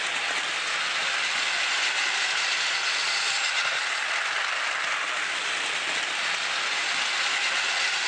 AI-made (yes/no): no